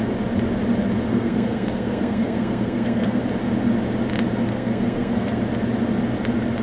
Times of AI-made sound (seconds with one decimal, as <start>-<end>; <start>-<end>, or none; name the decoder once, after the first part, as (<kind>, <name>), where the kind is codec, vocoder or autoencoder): 1.1-3.2 (codec, SNAC); 4.5-5.4